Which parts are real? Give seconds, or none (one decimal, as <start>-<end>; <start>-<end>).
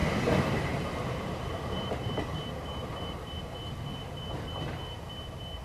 3.4-5.6